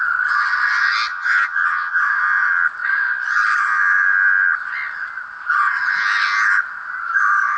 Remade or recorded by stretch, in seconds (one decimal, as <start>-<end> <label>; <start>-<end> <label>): 0.0-1.1 recorded; 1.1-2.0 remade; 2.0-7.6 recorded